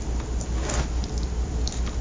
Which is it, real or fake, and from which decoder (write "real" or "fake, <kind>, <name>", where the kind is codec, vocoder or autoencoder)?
real